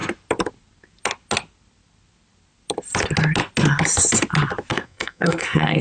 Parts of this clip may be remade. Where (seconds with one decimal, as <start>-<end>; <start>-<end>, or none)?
4.7-5.8